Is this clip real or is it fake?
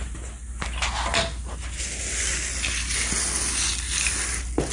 real